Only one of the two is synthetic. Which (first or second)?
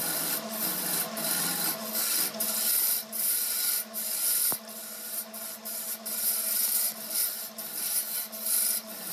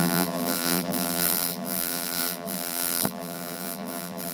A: second